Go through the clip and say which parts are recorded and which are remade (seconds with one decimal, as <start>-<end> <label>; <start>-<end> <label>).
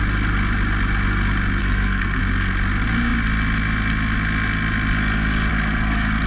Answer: 0.0-1.6 recorded; 1.6-2.2 remade; 2.2-5.5 recorded; 5.5-6.3 remade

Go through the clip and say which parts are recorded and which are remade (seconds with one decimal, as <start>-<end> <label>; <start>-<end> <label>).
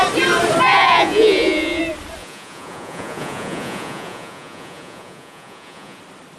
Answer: 0.0-0.7 recorded; 0.7-1.8 remade; 1.8-2.2 recorded; 2.2-6.0 remade; 6.0-6.4 recorded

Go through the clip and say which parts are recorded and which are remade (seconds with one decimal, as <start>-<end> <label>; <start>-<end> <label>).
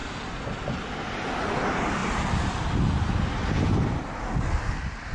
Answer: 0.0-5.1 recorded